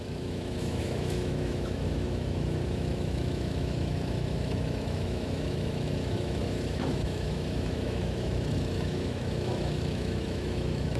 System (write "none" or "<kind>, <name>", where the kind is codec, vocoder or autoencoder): autoencoder, DAC-VAE